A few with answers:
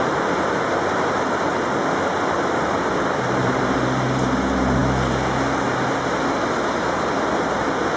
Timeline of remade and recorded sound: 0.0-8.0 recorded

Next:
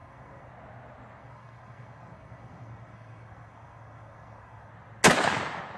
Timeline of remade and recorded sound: 0.0-0.5 remade; 0.5-1.2 recorded; 1.2-4.7 remade; 4.7-5.8 recorded

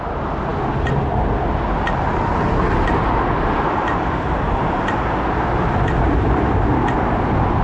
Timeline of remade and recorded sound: 0.0-7.6 recorded

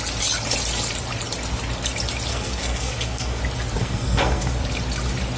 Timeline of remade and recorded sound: 0.0-2.3 recorded; 2.3-3.4 remade; 3.4-3.8 recorded; 3.8-4.5 remade; 4.5-5.4 recorded

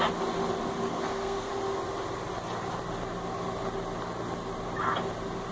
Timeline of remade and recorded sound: 0.0-0.9 recorded; 0.9-1.5 remade; 1.5-5.5 recorded

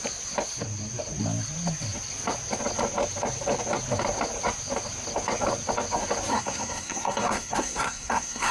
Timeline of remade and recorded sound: 0.0-6.3 recorded; 6.3-8.5 remade

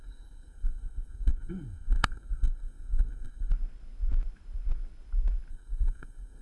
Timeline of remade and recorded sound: 0.0-3.5 remade; 3.5-5.5 recorded; 5.5-6.4 remade